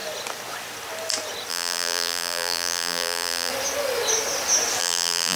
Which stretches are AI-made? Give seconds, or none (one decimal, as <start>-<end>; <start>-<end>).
1.5-3.5; 4.8-5.4